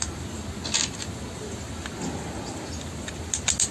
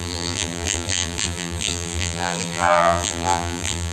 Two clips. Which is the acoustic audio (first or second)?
first